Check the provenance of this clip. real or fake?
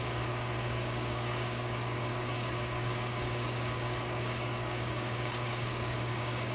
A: fake